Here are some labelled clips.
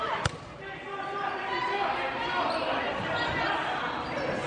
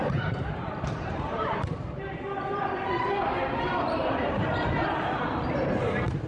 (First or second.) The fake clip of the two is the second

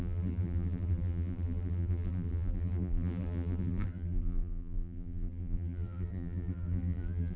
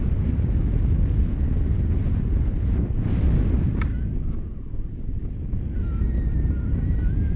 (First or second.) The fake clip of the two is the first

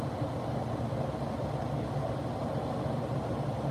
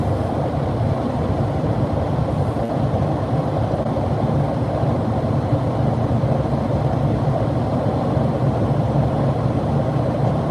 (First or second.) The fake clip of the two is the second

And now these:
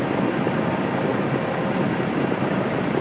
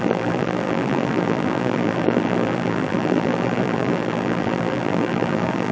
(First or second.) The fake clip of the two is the second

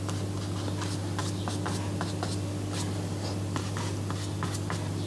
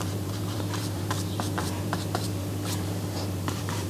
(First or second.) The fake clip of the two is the second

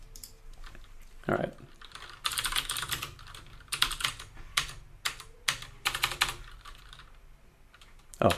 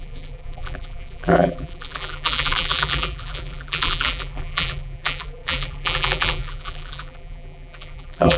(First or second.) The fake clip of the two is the second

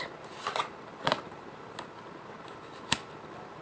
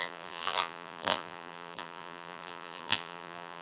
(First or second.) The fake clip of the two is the second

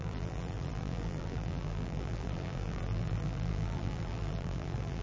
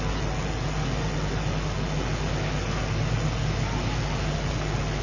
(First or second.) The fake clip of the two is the first